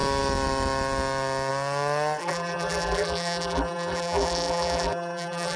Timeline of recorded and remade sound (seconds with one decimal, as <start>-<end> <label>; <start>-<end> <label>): 0.0-2.2 recorded; 2.2-5.6 remade